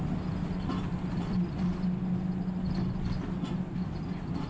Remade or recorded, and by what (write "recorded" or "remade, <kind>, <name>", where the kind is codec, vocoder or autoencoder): recorded